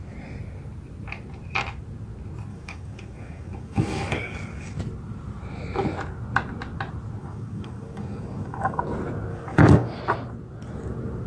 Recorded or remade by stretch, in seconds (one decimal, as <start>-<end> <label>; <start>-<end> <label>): 0.0-2.5 recorded; 2.5-4.8 remade; 4.8-7.2 recorded; 7.2-8.8 remade; 8.8-9.3 recorded; 9.3-10.0 remade; 10.0-11.3 recorded